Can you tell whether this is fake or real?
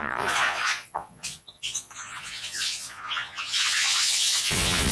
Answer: fake